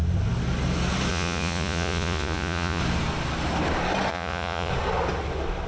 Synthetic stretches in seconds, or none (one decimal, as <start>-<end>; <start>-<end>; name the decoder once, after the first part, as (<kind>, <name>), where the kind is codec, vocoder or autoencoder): 1.1-2.8 (vocoder, Vocos); 4.1-4.7